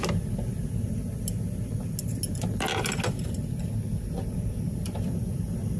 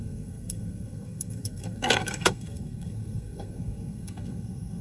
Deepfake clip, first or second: second